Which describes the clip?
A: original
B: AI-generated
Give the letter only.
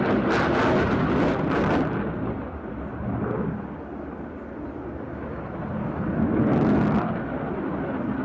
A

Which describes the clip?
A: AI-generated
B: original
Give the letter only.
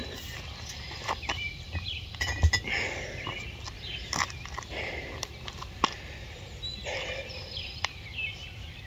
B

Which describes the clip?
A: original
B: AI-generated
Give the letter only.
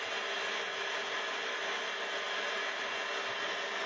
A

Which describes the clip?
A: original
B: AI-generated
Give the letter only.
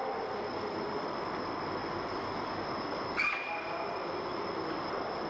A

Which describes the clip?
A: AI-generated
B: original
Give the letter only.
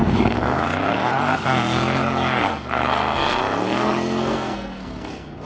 A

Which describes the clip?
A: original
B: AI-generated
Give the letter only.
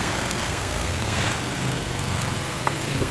B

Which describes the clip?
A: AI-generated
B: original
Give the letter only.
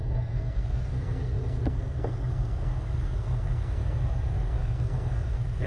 A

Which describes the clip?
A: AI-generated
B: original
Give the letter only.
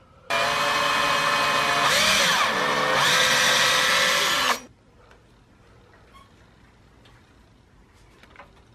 B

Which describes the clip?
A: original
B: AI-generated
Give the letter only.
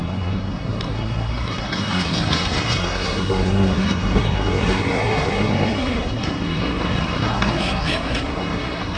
B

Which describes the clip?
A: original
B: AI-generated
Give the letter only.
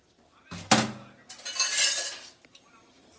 A